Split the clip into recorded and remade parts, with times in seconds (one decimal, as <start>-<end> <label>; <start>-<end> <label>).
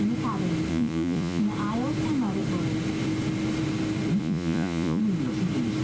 0.0-0.7 recorded; 0.7-1.4 remade; 1.4-4.2 recorded; 4.2-5.0 remade; 5.0-5.8 recorded